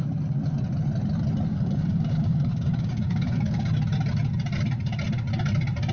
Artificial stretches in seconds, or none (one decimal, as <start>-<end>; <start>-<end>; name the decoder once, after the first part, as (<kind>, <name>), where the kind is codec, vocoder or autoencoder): 1.5-3.7 (codec, DAC)